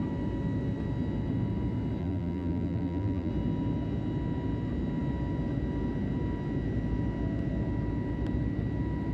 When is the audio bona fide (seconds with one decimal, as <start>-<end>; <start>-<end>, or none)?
0.0-2.0; 3.3-9.1